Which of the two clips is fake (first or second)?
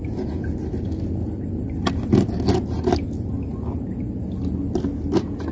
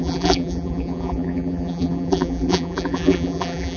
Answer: second